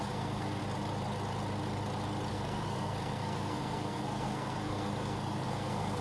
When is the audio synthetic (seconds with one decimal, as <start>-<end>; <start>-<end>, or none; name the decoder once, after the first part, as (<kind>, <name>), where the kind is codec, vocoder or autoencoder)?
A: 0.0-0.6 (codec, SNAC); 2.3-6.0

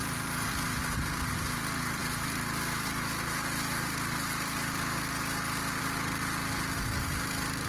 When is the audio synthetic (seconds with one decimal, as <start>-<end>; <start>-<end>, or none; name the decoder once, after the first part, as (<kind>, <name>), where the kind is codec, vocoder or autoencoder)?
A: none

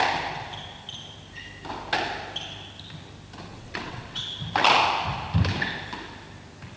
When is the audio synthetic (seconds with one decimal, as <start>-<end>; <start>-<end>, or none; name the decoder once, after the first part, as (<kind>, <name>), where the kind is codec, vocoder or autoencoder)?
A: 3.5-4.2 (vocoder, WaveNeXt)

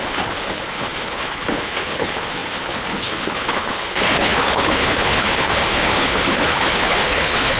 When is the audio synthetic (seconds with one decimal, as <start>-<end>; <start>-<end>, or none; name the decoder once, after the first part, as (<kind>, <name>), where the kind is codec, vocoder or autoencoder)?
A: 0.0-7.6 (codec, HILCodec)

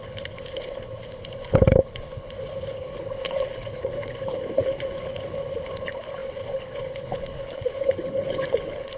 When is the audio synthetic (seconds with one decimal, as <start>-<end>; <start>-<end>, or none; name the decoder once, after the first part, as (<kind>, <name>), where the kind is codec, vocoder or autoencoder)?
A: 0.0-9.0 (codec, HILCodec)

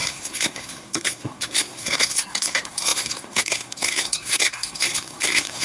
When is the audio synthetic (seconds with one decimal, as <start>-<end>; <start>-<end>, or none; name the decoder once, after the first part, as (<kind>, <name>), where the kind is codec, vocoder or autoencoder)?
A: 0.0-5.6 (codec, SNAC)